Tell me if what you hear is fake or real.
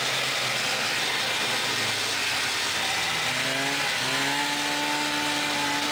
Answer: real